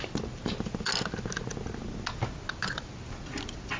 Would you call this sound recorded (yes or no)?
yes